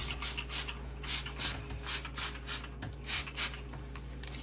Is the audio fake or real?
real